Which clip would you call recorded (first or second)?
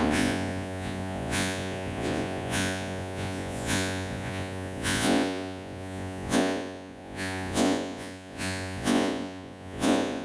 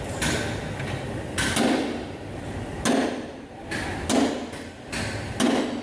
second